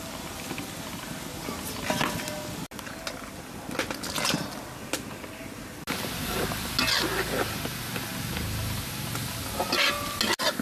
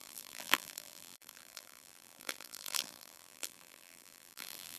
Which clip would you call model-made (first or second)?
second